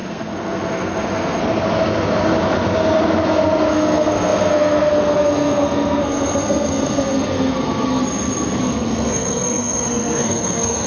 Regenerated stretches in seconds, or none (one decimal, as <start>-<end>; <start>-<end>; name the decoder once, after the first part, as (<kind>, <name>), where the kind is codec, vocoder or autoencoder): 0.0-1.4 (codec, SNAC); 3.7-8.0; 8.6-10.9